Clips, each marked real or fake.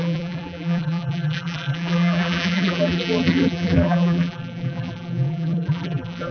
fake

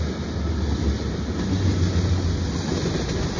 real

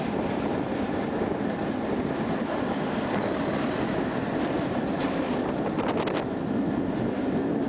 real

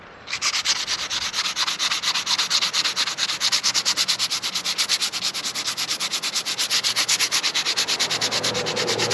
real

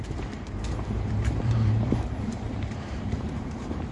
fake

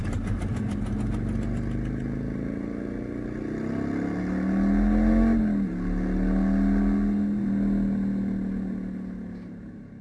real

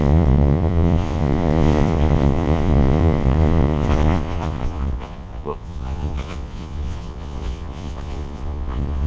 fake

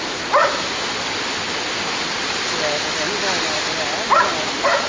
real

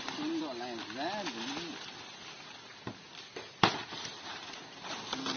real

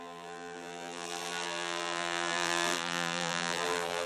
fake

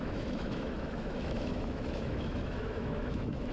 fake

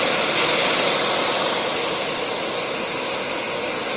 real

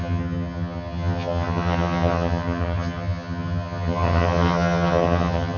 fake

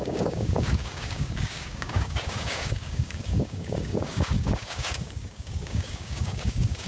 fake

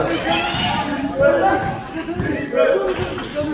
real